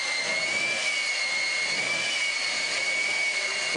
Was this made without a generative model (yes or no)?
yes